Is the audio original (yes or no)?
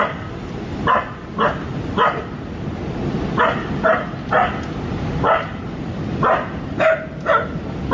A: yes